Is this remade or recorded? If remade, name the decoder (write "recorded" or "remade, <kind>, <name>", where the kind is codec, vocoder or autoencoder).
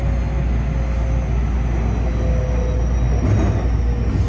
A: recorded